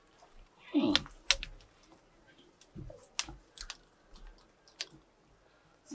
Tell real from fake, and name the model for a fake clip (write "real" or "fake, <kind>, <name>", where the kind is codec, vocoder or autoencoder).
real